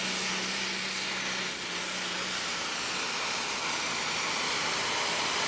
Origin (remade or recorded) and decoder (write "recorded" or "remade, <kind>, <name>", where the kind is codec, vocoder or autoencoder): recorded